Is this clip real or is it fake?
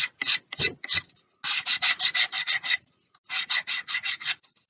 real